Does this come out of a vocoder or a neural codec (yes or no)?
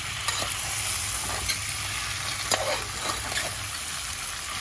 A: no